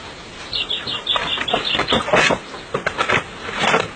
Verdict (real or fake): real